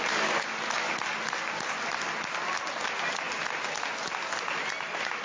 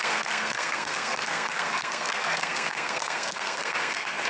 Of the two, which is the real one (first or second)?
first